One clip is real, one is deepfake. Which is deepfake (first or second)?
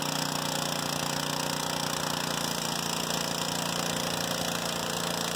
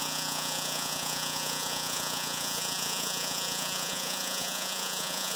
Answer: second